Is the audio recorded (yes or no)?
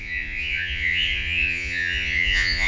no